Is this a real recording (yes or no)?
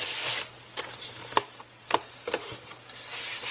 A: yes